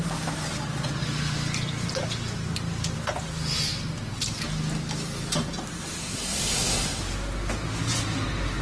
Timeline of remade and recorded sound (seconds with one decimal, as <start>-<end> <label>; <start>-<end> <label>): 0.0-6.0 recorded; 6.0-7.0 remade; 7.0-8.6 recorded